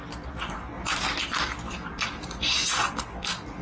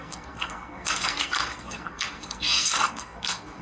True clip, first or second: first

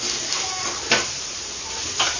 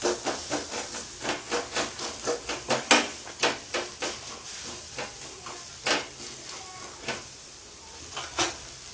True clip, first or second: second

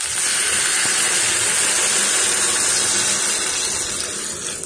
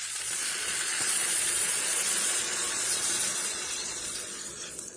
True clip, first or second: first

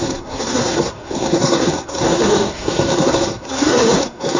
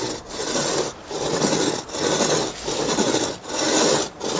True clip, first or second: second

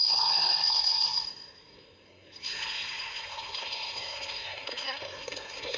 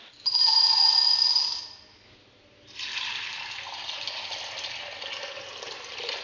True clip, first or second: second